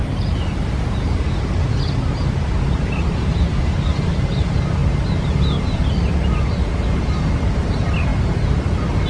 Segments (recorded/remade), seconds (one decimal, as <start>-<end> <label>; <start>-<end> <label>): 0.0-4.8 remade; 4.8-7.4 recorded; 7.4-8.1 remade; 8.1-9.1 recorded